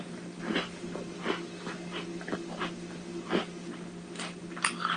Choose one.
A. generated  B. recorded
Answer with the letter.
B